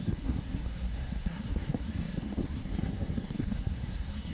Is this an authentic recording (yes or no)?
no